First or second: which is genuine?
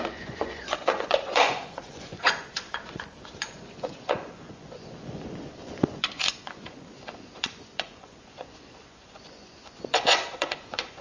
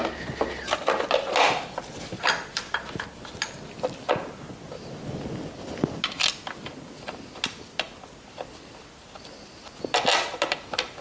second